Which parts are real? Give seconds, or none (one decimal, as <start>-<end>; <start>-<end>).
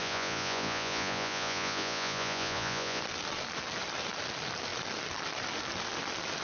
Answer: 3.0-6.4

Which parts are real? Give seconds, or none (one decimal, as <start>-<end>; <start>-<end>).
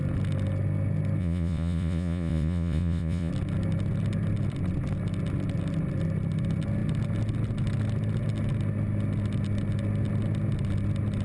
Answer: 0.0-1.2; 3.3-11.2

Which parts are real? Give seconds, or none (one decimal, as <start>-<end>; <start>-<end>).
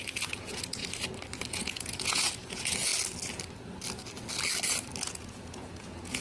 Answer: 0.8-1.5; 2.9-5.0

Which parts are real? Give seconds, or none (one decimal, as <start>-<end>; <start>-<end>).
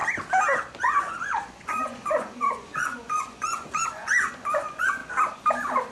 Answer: 0.0-0.8; 5.0-5.9